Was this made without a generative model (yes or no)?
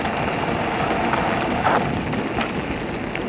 yes